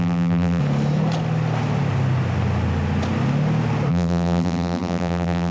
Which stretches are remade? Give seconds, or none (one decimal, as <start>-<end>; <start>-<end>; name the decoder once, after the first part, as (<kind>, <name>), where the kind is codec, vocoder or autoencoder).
0.0-0.6 (vocoder, BigVGAN v2); 3.9-5.5